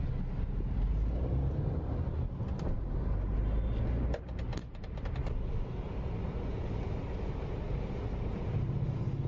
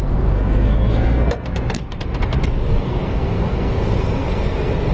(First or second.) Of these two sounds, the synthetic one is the second